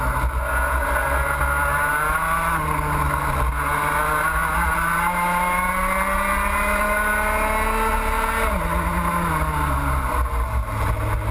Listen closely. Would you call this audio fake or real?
real